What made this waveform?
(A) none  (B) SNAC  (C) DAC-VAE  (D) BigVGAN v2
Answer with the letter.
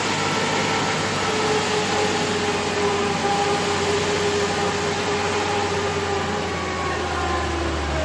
A